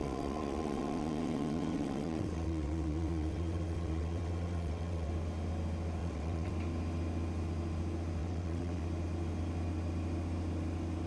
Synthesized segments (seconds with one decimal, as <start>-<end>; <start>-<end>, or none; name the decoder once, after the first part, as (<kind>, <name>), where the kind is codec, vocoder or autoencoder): 0.0-5.1 (vocoder, WaveNeXt); 6.0-6.5; 8.2-8.8